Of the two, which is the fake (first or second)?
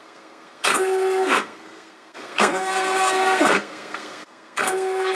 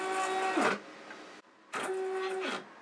first